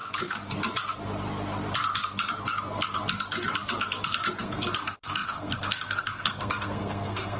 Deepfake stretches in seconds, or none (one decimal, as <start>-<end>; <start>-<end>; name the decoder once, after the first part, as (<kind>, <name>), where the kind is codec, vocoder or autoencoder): 4.4-7.4 (codec, SNAC)